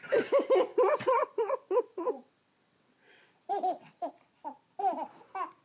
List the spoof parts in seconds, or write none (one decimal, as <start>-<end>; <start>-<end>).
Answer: 0.7-4.1